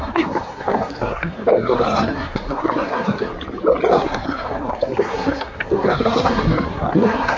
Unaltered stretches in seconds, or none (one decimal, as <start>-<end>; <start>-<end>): 3.3-3.9